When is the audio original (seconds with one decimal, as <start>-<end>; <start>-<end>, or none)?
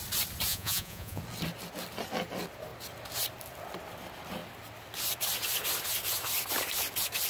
0.0-0.5; 1.2-7.3